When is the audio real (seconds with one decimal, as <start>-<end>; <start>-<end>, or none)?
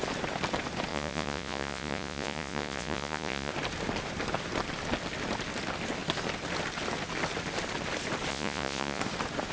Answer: 0.0-0.9; 3.5-8.3; 9.0-9.5